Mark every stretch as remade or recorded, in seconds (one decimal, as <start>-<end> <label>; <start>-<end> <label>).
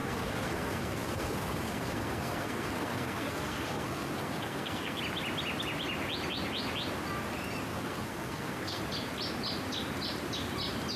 0.0-5.0 remade; 5.0-7.7 recorded; 7.7-8.8 remade; 8.8-11.0 recorded